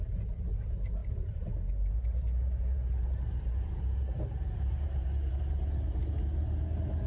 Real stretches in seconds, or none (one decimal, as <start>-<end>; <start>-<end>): 0.0-1.0; 5.3-7.1